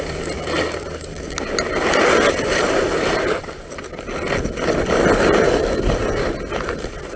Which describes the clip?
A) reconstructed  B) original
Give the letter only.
B